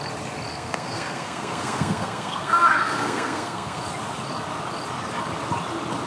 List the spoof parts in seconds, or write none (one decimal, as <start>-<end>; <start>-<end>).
0.5-3.8